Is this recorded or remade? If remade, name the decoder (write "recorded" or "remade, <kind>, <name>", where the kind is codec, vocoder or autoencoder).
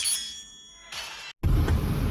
recorded